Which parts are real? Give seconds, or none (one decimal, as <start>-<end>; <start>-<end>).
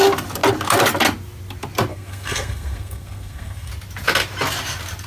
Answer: 0.0-1.9; 3.7-5.1